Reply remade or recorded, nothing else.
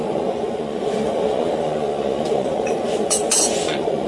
remade